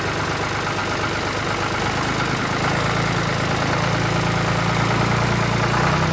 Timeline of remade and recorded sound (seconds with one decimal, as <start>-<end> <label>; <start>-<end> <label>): 0.0-6.1 recorded